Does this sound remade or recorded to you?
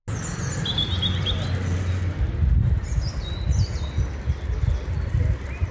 recorded